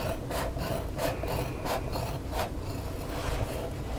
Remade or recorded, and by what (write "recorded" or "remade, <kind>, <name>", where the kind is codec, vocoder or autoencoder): recorded